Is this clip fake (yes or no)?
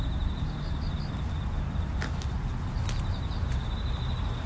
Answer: no